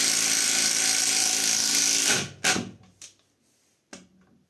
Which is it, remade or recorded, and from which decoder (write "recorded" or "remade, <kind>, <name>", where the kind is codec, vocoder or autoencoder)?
recorded